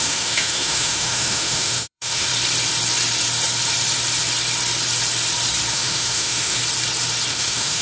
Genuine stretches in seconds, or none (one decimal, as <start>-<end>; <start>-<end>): 2.3-5.7; 6.6-7.3